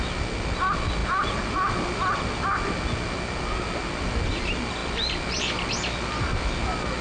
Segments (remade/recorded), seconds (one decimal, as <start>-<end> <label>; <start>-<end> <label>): 0.0-7.0 recorded